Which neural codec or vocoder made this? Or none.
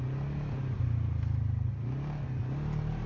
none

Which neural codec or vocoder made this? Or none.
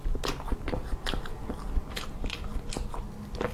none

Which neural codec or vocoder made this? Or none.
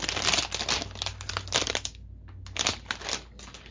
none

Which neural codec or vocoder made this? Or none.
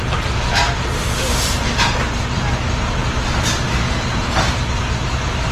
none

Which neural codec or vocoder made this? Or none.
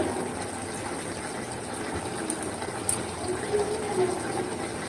none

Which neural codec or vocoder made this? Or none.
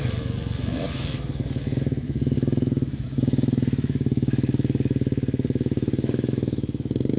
autoencoder, DAC-VAE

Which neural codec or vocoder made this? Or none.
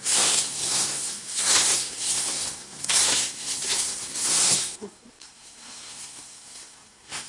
codec, SNAC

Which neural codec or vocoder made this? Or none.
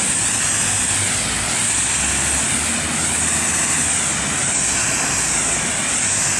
none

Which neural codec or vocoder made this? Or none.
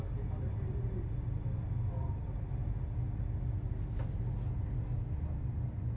none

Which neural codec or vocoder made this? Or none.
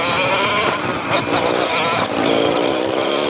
none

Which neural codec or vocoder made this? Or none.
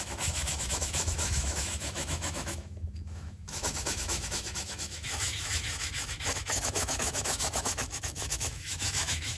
autoencoder, DAC-VAE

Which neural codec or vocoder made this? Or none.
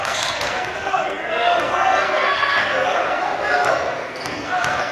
codec, SNAC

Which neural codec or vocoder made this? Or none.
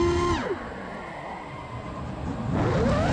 none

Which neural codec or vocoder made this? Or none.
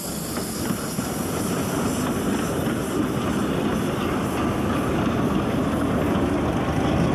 none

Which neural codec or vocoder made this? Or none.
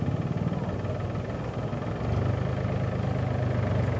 none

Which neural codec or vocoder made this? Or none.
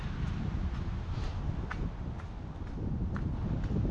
none